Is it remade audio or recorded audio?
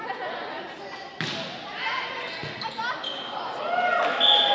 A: recorded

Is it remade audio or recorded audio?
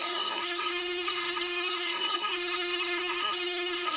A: remade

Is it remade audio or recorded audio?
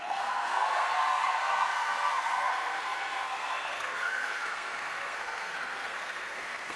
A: remade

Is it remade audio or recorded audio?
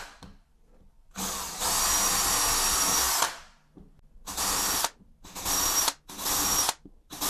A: recorded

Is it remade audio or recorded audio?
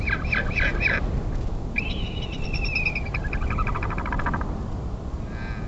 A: recorded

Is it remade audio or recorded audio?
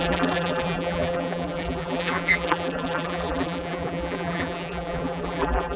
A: remade